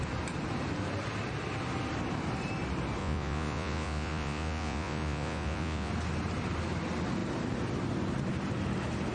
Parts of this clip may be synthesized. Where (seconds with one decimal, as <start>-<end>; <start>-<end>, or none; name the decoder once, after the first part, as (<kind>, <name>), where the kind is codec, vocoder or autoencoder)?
3.0-5.9 (vocoder, Vocos)